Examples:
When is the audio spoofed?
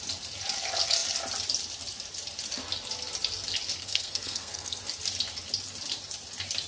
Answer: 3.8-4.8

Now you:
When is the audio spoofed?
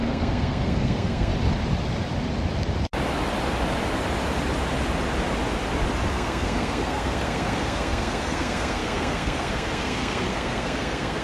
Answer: 0.0-1.3; 6.1-11.2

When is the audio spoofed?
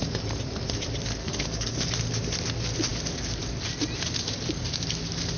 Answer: 1.2-1.9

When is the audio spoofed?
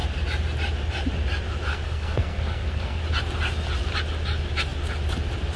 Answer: 1.7-3.0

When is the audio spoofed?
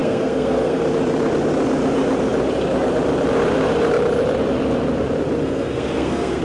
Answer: 0.0-0.8; 5.4-6.4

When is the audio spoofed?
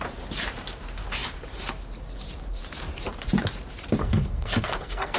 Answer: 4.0-5.2